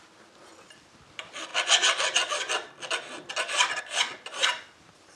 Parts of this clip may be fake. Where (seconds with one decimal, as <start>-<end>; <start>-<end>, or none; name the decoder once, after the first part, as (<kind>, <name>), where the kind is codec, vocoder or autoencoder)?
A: none